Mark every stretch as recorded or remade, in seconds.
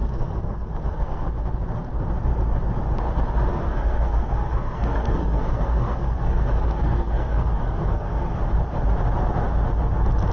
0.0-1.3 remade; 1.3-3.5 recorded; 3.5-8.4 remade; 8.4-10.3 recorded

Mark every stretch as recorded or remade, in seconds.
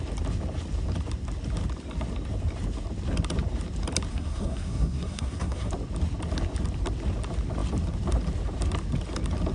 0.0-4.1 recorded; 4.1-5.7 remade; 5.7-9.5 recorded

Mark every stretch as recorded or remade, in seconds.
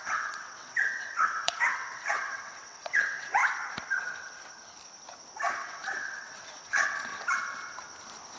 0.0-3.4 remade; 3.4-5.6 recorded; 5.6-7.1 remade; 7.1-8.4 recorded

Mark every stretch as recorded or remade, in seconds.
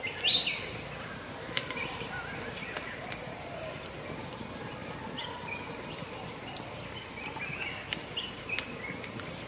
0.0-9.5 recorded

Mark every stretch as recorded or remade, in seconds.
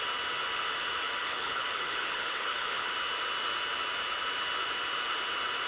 0.0-1.2 recorded; 1.2-2.9 remade; 2.9-5.7 recorded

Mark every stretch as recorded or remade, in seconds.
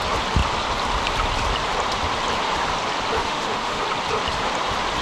0.0-3.2 recorded; 3.2-3.8 remade; 3.8-5.0 recorded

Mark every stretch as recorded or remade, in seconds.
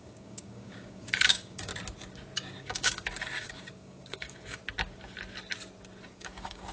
0.0-1.7 remade; 1.7-2.6 recorded; 2.6-4.6 remade; 4.6-6.1 recorded; 6.1-6.7 remade